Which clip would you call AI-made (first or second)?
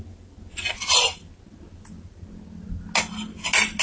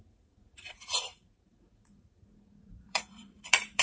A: second